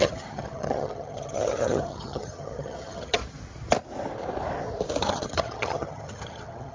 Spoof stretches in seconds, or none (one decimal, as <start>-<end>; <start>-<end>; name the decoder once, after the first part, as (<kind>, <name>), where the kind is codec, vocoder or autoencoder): 0.0-3.2 (vocoder, HiFi-GAN); 5.0-6.7